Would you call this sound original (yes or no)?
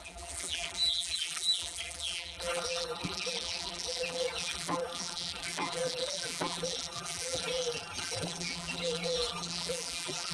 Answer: no